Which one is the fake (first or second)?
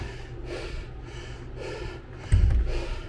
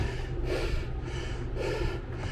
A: second